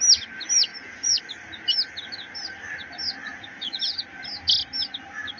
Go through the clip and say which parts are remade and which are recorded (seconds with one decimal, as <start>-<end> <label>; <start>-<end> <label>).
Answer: 0.0-0.7 recorded; 0.7-1.2 remade; 1.2-3.2 recorded; 3.2-4.0 remade; 4.0-5.4 recorded